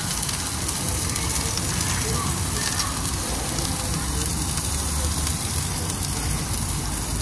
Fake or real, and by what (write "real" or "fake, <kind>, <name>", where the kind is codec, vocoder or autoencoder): real